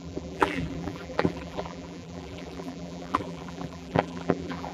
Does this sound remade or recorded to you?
remade